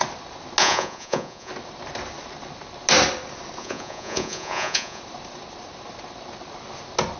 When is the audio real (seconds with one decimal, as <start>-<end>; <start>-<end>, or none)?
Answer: 0.0-0.6; 1.5-3.6; 5.0-7.2